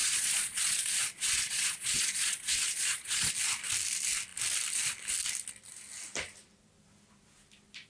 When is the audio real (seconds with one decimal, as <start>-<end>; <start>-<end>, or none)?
3.3-7.9